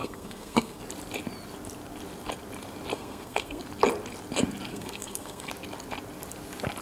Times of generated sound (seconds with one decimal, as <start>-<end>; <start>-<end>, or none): 0.0-0.8; 2.9-3.6; 4.7-5.5